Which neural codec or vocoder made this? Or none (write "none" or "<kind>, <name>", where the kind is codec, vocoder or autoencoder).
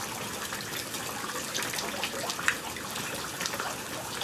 vocoder, BigVGAN v2